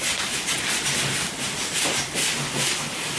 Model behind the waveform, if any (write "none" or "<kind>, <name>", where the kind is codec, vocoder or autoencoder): none